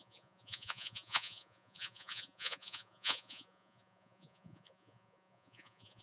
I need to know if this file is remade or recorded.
remade